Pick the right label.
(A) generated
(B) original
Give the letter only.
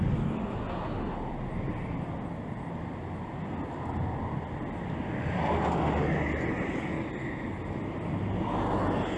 B